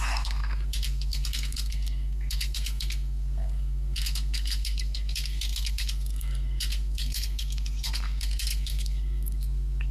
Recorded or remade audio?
remade